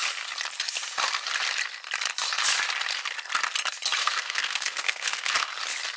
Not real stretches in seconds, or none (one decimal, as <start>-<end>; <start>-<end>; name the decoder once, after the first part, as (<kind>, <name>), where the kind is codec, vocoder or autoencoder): 4.0-5.5 (codec, SNAC)